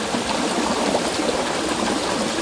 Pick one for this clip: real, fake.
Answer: real